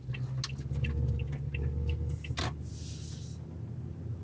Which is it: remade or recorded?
recorded